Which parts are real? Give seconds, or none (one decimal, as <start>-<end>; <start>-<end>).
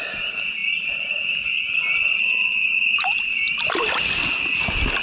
0.0-5.0